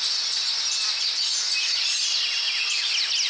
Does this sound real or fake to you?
real